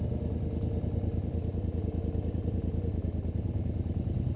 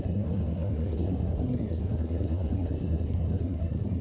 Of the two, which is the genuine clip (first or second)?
first